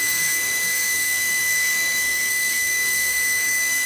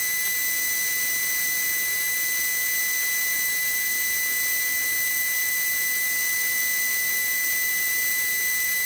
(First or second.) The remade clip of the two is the first